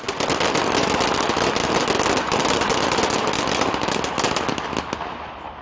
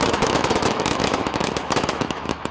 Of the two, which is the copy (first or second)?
second